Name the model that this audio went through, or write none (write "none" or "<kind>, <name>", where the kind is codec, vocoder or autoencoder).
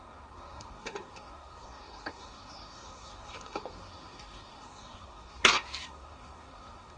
codec, SNAC